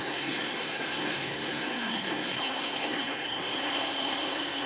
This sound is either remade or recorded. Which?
remade